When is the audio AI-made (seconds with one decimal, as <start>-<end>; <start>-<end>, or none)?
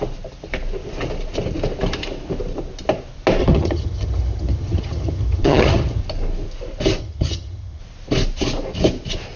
3.4-6.0; 7.0-7.8